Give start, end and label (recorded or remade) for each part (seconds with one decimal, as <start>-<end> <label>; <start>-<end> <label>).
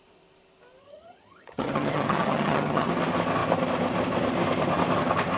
0.0-0.8 recorded; 0.8-2.9 remade; 2.9-5.4 recorded